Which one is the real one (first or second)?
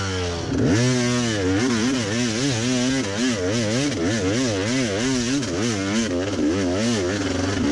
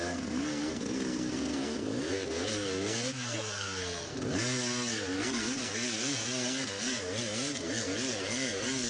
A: first